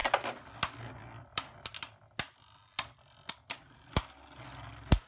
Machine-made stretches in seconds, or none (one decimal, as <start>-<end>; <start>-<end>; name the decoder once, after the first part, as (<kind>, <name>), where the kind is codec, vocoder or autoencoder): none